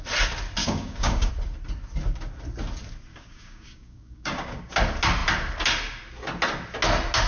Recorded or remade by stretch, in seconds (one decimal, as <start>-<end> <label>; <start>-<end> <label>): 0.0-0.6 recorded; 0.6-1.3 remade; 1.3-3.1 recorded; 3.1-4.7 remade; 4.7-7.3 recorded